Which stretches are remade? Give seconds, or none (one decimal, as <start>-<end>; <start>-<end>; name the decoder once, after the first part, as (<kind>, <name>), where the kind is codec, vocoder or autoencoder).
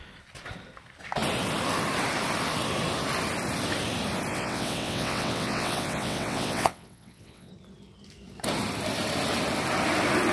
4.3-7.5 (vocoder, WaveNeXt)